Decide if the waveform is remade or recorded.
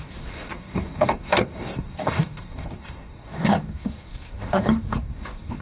remade